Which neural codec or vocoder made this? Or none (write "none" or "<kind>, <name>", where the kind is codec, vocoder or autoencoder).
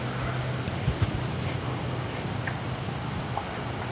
none